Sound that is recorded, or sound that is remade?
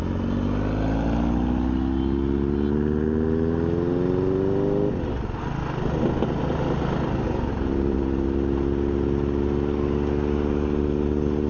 recorded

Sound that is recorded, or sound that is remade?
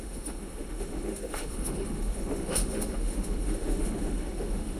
remade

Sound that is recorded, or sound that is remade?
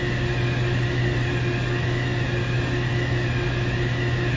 recorded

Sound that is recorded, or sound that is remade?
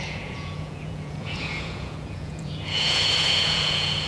remade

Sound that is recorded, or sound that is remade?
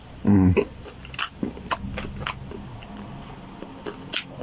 recorded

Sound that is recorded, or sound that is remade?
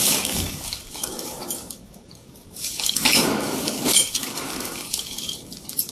remade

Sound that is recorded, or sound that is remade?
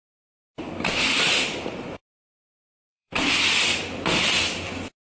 remade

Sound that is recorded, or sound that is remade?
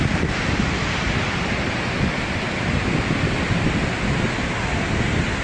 recorded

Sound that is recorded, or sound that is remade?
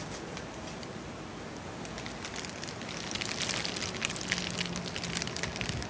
recorded